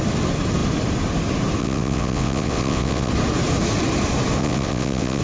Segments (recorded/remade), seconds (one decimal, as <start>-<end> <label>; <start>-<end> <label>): 0.0-1.6 recorded; 1.6-3.1 remade; 3.1-4.4 recorded; 4.4-5.2 remade